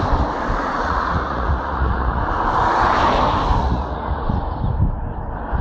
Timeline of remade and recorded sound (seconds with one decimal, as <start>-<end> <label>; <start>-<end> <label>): 0.0-0.6 recorded; 0.6-2.2 remade; 2.2-3.6 recorded; 3.6-4.4 remade; 4.4-5.6 recorded